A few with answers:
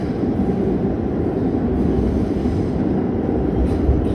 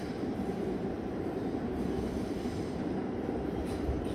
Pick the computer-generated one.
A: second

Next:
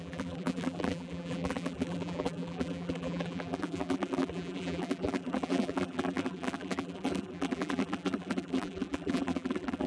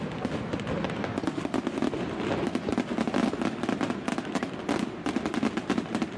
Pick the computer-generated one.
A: first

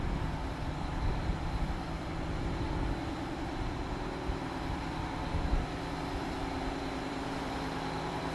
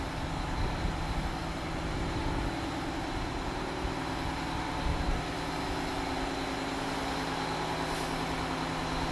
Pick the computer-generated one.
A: first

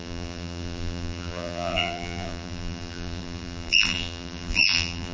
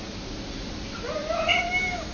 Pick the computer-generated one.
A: first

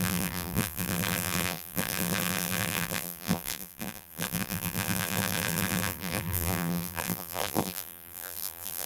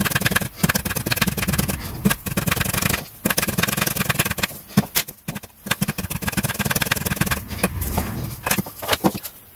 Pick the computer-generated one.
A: first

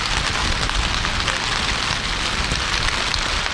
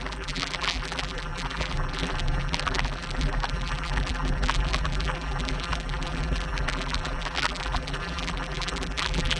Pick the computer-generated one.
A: second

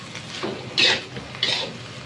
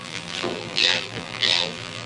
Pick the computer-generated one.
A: second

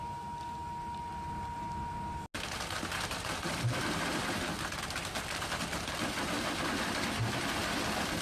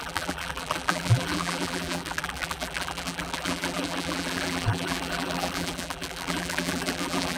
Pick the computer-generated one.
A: second